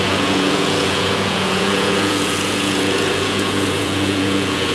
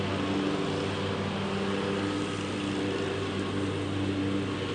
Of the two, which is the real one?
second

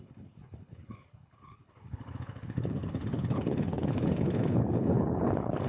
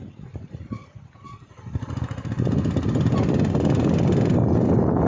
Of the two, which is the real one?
second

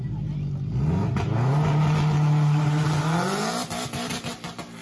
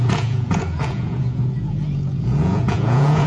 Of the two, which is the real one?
first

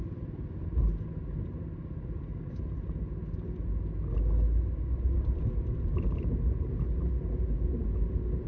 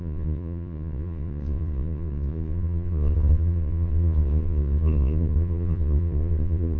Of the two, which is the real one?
first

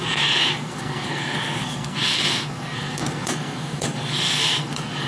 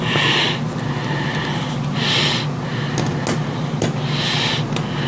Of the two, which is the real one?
second